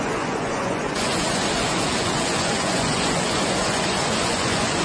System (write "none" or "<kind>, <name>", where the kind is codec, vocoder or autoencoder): vocoder, Vocos